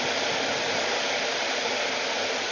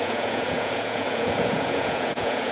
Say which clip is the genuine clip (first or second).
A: first